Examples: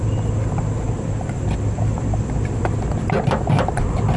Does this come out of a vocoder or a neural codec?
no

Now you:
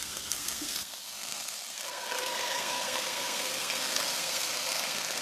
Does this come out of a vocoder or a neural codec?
yes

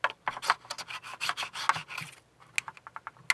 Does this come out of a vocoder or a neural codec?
no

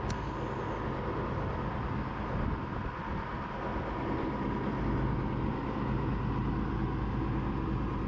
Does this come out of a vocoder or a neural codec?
no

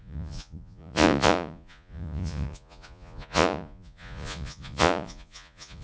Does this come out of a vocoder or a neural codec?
yes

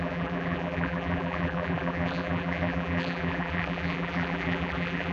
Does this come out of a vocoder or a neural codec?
yes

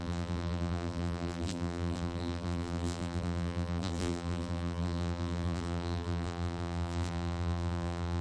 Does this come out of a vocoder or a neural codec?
yes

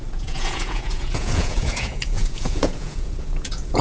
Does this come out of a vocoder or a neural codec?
yes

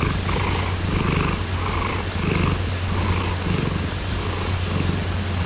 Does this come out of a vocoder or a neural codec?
no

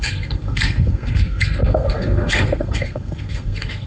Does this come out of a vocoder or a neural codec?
yes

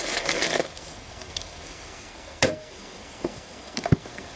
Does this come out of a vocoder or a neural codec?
yes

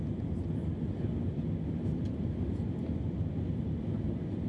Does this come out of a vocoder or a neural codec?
no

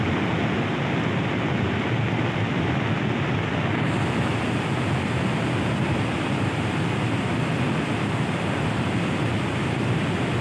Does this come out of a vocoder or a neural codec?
no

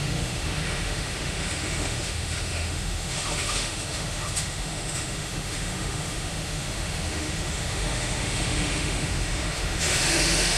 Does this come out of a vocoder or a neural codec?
yes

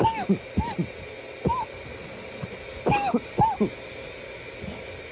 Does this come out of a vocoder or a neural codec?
no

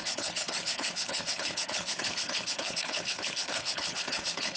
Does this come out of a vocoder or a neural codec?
yes